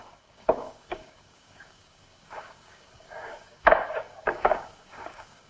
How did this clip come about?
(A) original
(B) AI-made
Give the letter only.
B